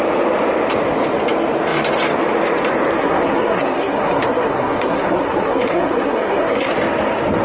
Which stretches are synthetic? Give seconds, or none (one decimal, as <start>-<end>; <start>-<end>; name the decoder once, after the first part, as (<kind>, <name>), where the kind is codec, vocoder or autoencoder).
3.0-6.7 (codec, SNAC)